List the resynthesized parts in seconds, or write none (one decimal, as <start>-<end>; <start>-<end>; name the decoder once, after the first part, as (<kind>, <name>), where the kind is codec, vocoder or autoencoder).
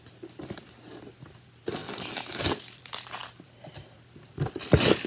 0.0-1.8 (vocoder, BigVGAN v2); 2.4-5.1